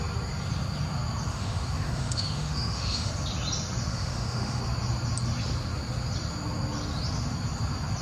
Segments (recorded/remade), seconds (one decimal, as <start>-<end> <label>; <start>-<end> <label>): 0.0-1.3 recorded; 1.3-3.1 remade; 3.1-3.9 recorded; 3.9-4.6 remade; 4.6-8.0 recorded